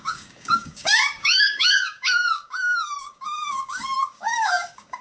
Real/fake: fake